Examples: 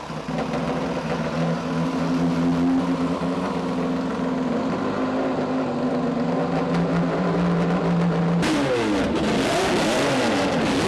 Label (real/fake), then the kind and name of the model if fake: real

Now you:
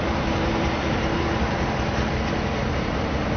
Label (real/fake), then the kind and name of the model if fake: fake, vocoder, BigVGAN v2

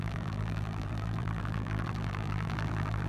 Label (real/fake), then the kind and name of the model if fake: fake, vocoder, BigVGAN v2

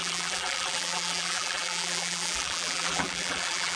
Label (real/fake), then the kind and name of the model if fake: fake, vocoder, BigVGAN v2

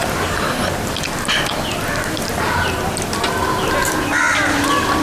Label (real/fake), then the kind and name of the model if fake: real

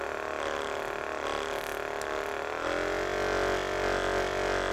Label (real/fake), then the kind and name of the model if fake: real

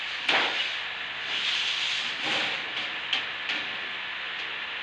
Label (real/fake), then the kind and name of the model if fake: real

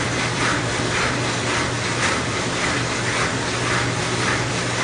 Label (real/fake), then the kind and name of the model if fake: fake, vocoder, BigVGAN v2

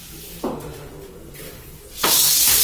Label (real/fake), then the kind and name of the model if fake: real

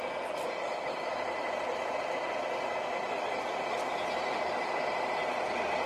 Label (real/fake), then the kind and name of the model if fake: real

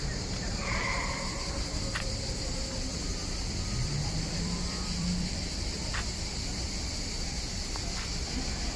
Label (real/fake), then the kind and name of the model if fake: fake, vocoder, BigVGAN v2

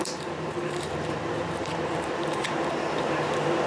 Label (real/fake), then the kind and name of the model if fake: fake, vocoder, BigVGAN v2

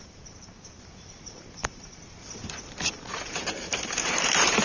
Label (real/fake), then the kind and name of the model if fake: fake, vocoder, BigVGAN v2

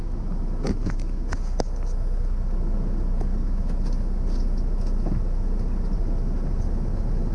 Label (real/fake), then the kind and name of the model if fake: real